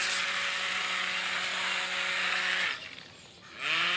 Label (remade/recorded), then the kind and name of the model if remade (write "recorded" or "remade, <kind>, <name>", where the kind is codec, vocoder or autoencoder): recorded